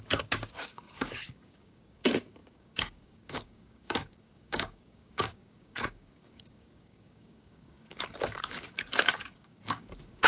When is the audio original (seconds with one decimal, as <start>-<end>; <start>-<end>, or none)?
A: none